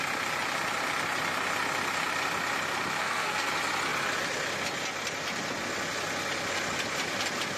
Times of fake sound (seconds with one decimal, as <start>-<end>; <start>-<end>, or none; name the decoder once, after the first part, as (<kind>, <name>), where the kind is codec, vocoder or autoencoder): 3.0-3.5 (codec, SNAC)